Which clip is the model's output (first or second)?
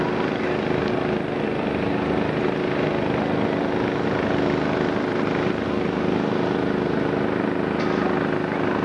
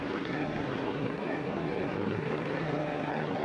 second